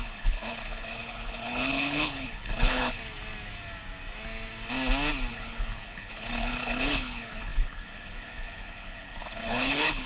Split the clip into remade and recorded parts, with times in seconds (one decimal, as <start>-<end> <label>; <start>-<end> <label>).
0.0-3.0 remade; 3.0-5.3 recorded; 5.3-10.1 remade